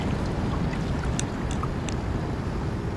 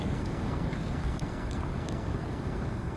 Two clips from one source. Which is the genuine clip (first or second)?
first